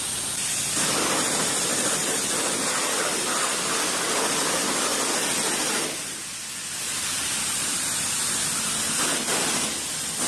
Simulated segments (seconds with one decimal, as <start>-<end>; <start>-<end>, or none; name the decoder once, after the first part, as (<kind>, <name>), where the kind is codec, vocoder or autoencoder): none